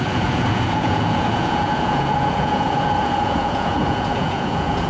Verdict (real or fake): fake